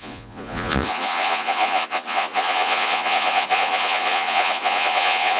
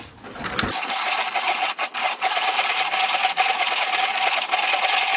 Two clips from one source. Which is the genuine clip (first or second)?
second